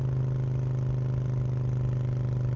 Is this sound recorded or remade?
recorded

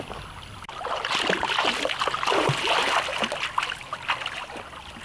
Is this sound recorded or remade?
recorded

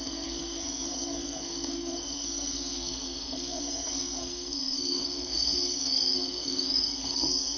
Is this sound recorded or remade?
remade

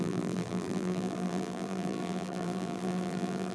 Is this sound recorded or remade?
remade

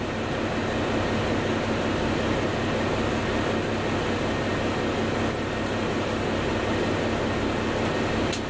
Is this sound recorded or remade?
recorded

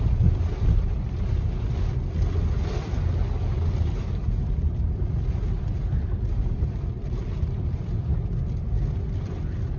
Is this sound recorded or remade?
recorded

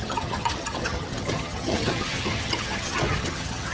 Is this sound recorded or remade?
remade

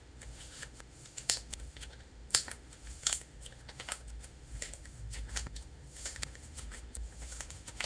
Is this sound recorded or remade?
remade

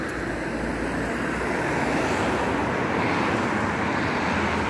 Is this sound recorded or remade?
recorded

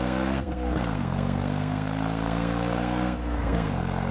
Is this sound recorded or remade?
remade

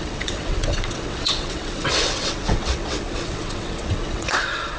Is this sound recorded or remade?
remade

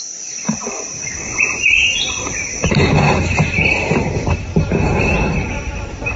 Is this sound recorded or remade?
remade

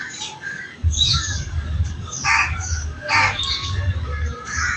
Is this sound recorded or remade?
remade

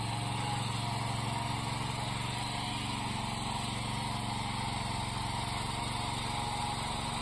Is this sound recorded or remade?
recorded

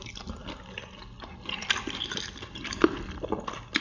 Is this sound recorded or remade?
recorded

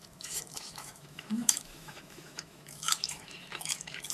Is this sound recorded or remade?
remade